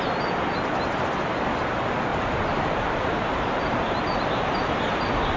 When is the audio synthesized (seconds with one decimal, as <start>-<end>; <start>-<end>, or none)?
2.1-3.8